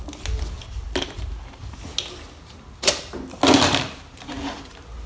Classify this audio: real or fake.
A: real